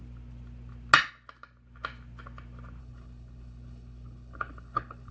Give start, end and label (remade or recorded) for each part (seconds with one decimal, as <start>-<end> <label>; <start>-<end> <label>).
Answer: 0.0-2.8 recorded; 2.8-5.1 remade